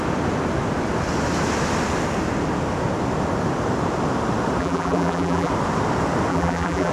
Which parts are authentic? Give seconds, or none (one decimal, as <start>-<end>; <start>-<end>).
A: 0.0-4.6; 5.5-6.3